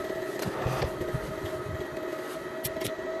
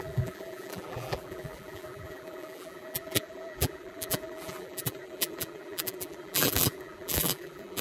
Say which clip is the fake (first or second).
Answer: second